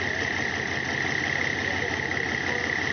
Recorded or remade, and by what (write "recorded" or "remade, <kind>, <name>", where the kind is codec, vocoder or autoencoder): recorded